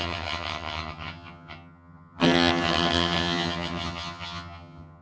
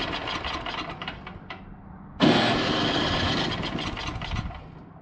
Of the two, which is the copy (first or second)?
first